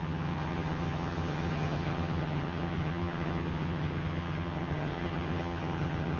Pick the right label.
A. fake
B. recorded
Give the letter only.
A